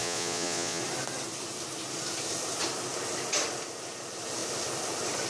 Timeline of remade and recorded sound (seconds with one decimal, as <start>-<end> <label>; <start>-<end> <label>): 0.0-0.8 remade; 0.8-5.3 recorded